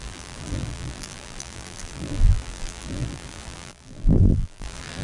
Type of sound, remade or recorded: remade